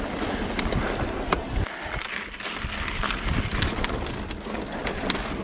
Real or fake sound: real